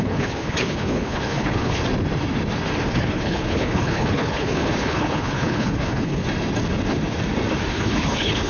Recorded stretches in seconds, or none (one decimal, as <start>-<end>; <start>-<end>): 1.8-2.9; 6.2-7.7